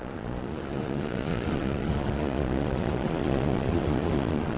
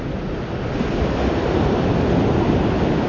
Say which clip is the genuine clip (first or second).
second